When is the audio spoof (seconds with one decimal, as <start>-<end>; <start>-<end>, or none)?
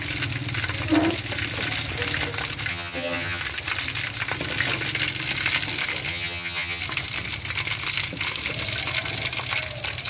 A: 2.7-3.4; 6.1-6.8